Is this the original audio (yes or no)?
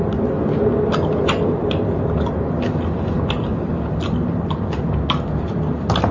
yes